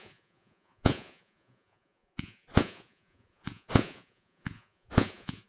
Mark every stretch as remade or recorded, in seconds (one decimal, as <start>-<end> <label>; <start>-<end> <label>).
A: 0.0-5.5 remade